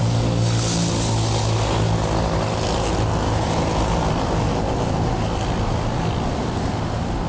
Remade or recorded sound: recorded